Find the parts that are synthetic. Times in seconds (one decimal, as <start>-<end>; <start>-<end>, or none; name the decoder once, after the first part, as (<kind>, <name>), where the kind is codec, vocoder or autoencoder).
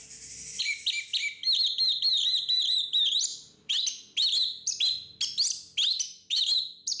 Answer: 0.0-0.6 (vocoder, BigVGAN v2); 2.3-2.8; 3.3-3.8